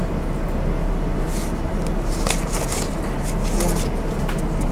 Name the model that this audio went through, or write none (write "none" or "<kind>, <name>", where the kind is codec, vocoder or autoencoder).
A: none